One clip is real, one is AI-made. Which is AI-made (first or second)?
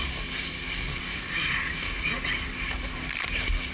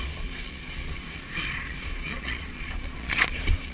second